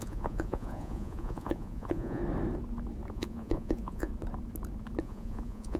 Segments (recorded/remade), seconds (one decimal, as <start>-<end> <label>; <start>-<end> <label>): 0.0-2.2 remade; 2.2-3.1 recorded; 3.1-4.1 remade; 4.1-5.0 recorded; 5.0-5.8 remade